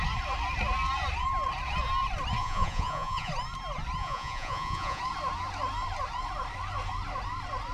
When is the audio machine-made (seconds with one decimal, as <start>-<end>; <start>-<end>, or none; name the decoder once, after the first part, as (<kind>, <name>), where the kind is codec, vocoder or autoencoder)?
2.4-3.3 (vocoder, Vocos); 4.0-5.0